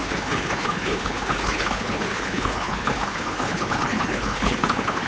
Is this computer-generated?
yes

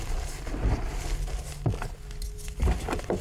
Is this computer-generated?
no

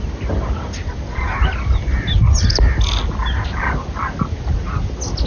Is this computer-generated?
no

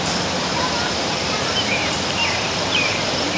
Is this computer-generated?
yes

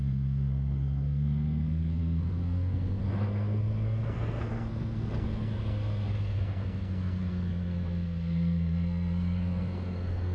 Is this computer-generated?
yes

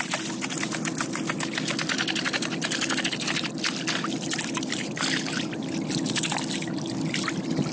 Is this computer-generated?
no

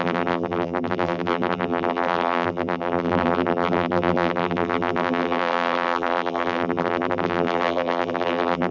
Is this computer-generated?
yes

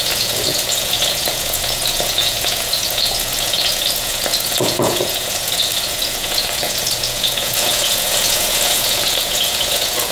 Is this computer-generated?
yes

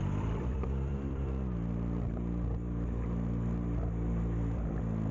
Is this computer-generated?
yes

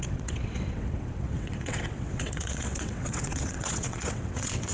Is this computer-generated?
yes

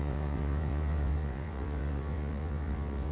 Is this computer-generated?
yes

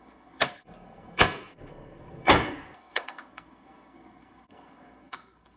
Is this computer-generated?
yes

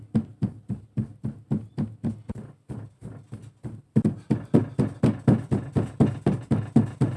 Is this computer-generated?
no